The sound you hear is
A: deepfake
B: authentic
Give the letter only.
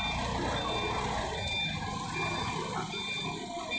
B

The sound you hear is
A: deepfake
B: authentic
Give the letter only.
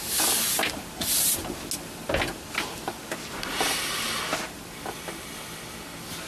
B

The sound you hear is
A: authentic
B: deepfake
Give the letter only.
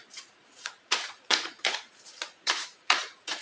B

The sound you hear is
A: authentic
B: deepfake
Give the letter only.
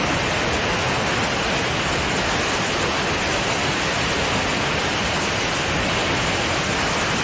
A